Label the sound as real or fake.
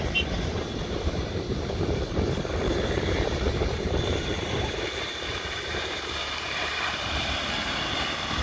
fake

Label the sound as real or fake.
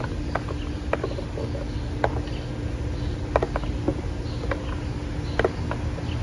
real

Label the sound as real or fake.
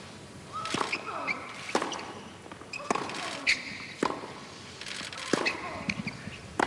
real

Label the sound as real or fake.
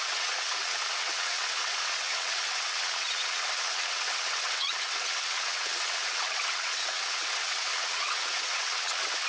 fake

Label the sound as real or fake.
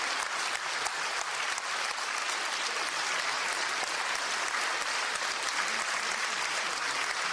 real